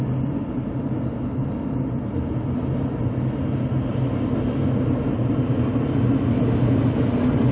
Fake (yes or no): no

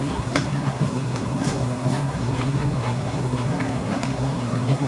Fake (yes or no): yes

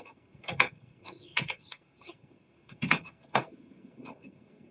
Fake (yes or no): yes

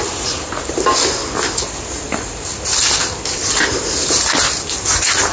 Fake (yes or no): no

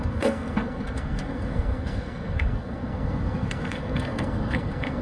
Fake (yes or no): yes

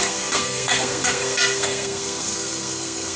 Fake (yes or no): yes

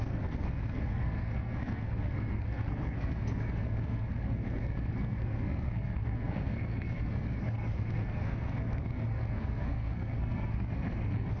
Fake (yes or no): yes